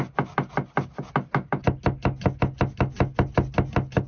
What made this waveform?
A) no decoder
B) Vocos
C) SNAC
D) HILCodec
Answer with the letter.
A